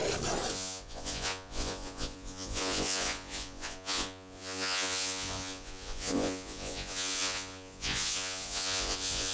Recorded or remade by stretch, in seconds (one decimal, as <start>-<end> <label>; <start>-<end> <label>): 0.0-0.5 recorded; 0.5-9.3 remade